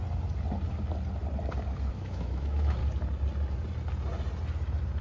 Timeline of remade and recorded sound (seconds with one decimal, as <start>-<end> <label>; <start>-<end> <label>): 0.0-1.9 recorded; 1.9-2.8 remade; 2.8-5.0 recorded